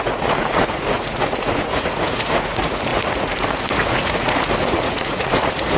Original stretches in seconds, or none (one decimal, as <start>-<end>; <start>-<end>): none